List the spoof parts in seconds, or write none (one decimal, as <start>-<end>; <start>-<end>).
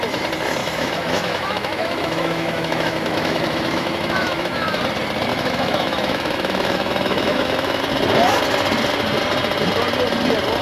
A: 0.6-4.8; 5.3-7.8